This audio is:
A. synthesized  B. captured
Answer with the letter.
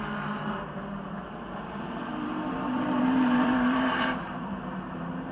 A